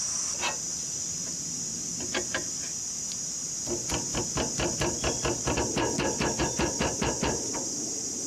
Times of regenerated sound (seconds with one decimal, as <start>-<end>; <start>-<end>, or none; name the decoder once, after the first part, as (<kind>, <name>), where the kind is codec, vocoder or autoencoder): none